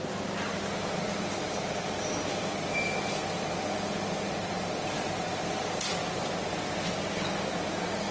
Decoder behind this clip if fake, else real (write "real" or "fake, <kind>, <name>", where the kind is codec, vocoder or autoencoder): real